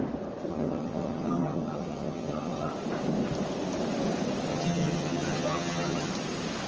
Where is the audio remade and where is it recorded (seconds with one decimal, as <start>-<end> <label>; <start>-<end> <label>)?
0.0-0.5 recorded; 0.5-2.7 remade; 2.7-4.5 recorded; 4.5-6.1 remade; 6.1-6.7 recorded